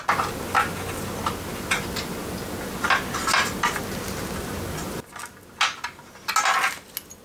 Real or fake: real